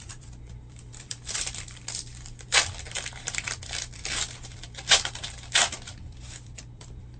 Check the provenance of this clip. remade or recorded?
remade